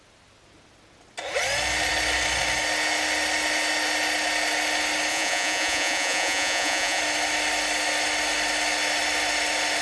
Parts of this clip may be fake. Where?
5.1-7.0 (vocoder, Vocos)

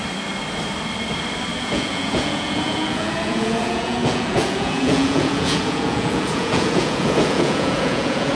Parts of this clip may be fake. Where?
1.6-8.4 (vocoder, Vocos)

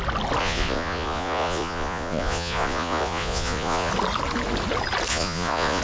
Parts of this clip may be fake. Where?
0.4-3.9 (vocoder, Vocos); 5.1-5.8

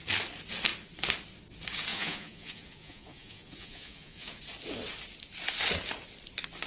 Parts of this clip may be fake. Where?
1.9-4.4 (vocoder, Vocos)

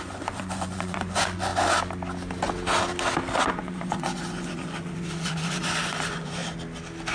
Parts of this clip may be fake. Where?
0.0-1.5 (vocoder, Vocos); 3.5-6.4